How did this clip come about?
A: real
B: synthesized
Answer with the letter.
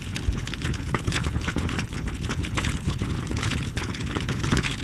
B